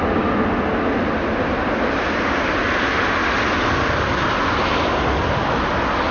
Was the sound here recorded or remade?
recorded